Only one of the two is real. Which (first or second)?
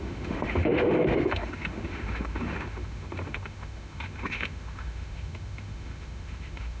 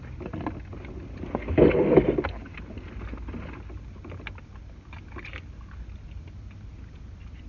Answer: second